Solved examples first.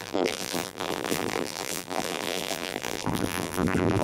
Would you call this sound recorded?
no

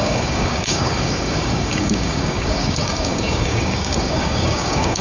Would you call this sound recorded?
no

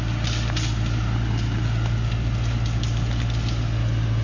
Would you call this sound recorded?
yes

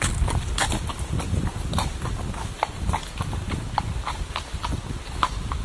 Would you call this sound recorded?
yes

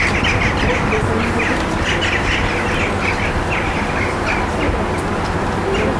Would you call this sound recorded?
yes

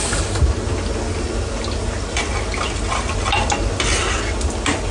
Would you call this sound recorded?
yes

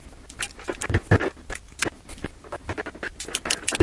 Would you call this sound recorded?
yes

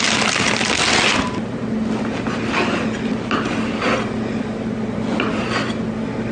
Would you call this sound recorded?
yes